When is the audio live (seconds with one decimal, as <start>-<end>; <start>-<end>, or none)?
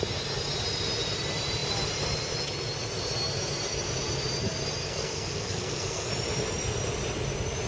0.0-4.8; 6.1-7.7